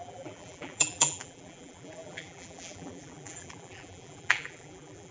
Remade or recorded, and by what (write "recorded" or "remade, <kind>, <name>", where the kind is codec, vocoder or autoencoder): remade, vocoder, BigVGAN v2